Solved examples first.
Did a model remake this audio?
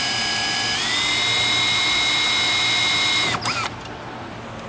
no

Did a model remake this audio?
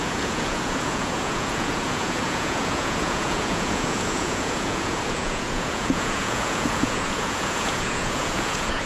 yes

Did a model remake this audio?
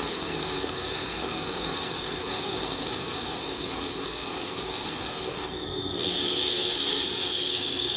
yes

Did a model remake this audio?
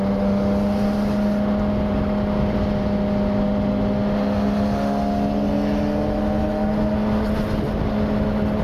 no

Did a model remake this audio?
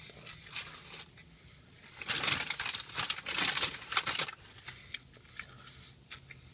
no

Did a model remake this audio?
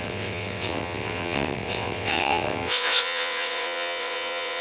yes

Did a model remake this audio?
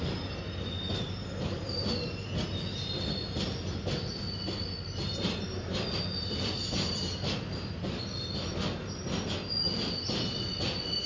no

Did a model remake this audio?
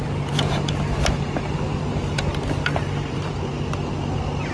no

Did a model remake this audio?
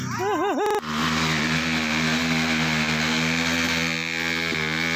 no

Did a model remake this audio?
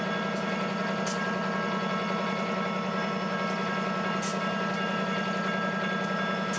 no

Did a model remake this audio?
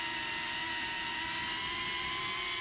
no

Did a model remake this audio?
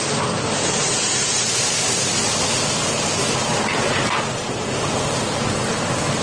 no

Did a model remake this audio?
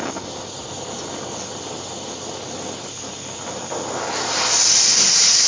no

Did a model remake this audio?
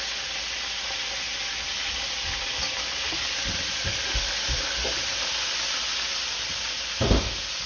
no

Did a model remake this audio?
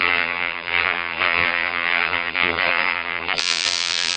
yes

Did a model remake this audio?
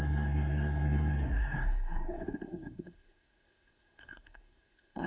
yes